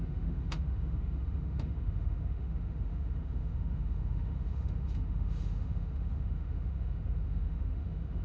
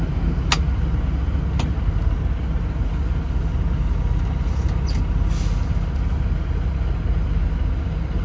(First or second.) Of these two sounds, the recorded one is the second